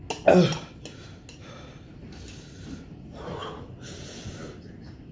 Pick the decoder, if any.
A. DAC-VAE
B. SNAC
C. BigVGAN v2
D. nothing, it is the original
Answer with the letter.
D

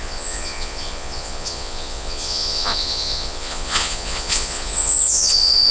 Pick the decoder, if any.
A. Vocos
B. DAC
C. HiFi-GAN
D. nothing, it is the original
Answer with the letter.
A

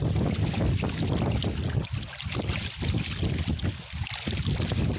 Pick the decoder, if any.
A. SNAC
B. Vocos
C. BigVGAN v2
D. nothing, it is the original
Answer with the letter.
D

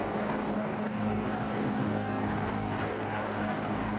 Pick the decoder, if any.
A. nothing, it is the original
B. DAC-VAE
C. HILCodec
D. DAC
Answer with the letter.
D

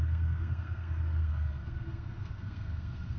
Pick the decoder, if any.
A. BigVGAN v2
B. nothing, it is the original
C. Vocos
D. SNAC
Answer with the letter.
D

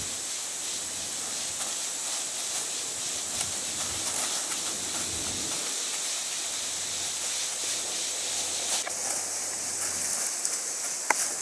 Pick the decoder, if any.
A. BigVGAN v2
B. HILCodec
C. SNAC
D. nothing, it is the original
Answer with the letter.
D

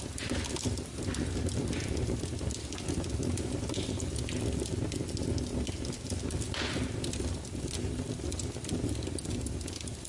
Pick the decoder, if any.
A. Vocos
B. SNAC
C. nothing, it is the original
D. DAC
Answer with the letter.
C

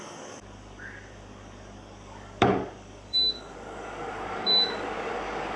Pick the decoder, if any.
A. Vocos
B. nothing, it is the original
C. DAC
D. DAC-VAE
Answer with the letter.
C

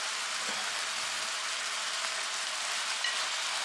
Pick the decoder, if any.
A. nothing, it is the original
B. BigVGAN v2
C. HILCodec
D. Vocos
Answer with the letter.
A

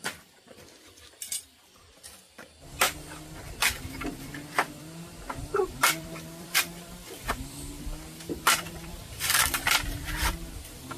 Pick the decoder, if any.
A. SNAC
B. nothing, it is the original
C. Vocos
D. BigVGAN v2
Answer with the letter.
D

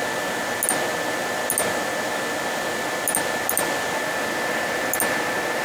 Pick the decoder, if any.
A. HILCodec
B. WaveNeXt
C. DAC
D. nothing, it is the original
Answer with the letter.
D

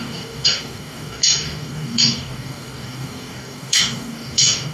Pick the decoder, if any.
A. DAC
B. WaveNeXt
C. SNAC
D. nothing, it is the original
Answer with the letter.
A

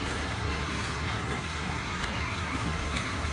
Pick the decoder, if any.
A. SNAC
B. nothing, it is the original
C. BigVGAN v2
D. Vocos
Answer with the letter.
A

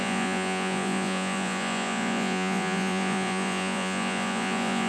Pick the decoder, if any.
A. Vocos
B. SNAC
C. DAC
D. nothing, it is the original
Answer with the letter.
A